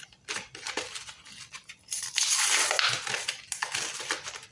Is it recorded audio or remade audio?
recorded